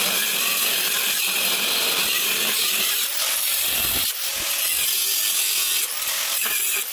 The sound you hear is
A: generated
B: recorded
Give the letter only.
B